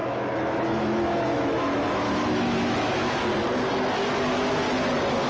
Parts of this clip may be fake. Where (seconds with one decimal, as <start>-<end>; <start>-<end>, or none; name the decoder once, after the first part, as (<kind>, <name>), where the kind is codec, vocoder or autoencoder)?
0.0-3.2 (autoencoder, DAC-VAE)